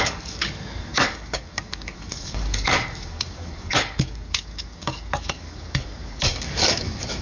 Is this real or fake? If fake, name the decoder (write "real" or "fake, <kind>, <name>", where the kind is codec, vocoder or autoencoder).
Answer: fake, codec, DAC